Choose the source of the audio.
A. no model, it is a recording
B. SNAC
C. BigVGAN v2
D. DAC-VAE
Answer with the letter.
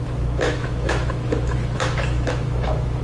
D